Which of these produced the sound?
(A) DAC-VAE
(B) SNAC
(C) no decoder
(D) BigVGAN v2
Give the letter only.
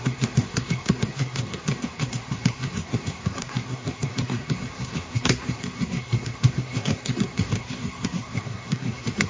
B